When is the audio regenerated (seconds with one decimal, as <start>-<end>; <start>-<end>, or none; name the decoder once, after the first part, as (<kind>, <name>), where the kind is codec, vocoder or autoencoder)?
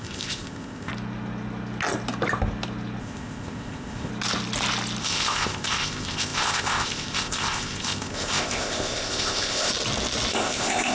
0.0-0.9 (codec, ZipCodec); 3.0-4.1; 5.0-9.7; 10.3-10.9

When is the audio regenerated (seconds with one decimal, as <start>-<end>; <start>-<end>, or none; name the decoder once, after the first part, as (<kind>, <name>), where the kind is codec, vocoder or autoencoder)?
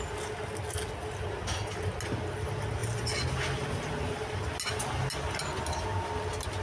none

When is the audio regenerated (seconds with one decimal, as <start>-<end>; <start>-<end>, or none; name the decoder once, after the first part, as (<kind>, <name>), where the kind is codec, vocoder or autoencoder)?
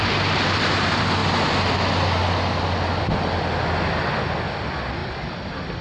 none